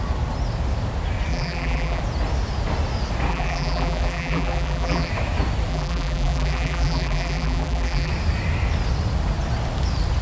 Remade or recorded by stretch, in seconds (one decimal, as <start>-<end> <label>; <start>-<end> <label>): 0.0-1.3 recorded; 1.3-2.0 remade; 2.0-3.3 recorded; 3.3-5.1 remade; 5.1-5.7 recorded; 5.7-8.1 remade; 8.1-10.2 recorded